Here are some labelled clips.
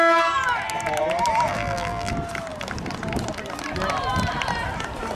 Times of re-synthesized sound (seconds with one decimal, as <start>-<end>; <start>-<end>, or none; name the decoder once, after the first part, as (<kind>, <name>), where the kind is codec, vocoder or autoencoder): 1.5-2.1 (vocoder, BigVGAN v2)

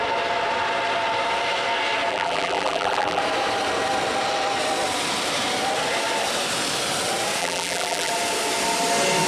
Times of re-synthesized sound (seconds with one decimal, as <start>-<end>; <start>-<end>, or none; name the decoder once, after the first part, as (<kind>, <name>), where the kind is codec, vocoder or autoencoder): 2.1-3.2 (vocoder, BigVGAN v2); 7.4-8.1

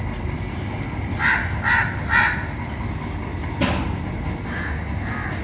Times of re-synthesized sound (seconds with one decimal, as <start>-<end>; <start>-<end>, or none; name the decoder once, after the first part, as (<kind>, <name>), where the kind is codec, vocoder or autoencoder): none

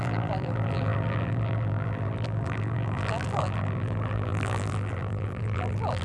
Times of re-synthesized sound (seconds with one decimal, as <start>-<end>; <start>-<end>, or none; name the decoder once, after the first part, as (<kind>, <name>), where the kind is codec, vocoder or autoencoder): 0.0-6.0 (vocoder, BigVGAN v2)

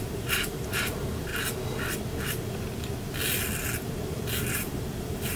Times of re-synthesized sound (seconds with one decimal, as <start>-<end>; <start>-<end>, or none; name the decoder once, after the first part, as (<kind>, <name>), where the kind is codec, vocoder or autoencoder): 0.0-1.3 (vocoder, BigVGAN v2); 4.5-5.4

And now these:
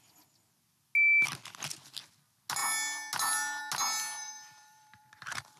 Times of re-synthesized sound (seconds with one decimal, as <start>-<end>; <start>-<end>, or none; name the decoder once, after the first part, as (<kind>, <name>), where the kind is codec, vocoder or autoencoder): 4.2-5.0 (vocoder, BigVGAN v2)

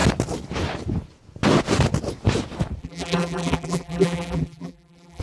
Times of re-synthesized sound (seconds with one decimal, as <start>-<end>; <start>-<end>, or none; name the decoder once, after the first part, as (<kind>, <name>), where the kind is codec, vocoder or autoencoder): 2.8-5.2 (vocoder, BigVGAN v2)